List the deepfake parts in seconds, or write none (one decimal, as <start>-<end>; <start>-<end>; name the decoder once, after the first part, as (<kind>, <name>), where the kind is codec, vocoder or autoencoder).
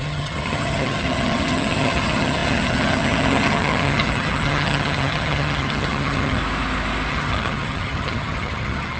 0.0-6.4 (vocoder, HiFi-GAN); 7.1-9.0